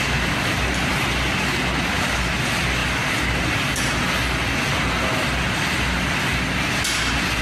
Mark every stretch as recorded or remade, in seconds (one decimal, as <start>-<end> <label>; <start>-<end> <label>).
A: 0.0-7.4 recorded